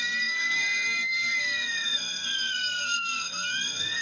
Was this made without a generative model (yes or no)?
no